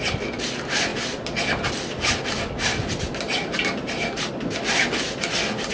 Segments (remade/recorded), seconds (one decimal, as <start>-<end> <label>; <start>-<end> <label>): 0.0-5.7 recorded